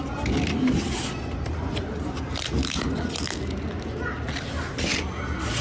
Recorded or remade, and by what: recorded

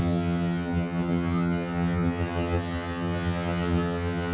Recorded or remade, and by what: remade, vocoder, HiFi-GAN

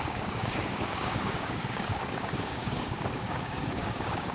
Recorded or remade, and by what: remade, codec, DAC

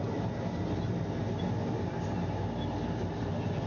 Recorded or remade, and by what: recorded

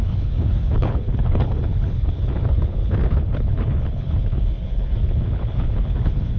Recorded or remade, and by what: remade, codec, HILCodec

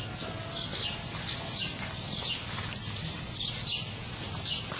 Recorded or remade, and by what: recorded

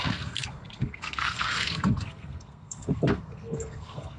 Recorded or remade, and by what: remade, codec, SNAC